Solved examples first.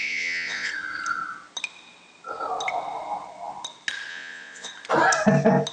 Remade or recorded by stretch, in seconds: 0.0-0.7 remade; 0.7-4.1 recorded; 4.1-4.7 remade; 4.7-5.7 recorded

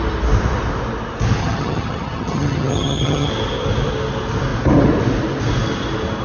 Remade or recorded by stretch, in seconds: 0.0-1.4 recorded; 1.4-3.3 remade; 3.3-6.2 recorded